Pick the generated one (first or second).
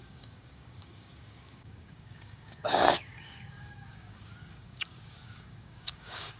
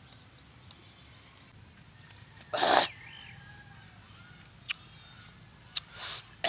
first